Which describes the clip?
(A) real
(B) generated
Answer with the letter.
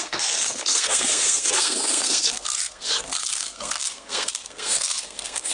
B